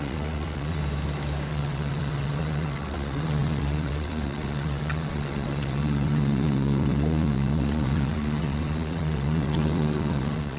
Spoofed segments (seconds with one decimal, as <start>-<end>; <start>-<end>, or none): 0.0-0.8; 1.5-10.6